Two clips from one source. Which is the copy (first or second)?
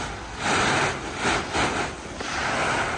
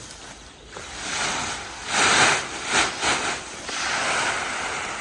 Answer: second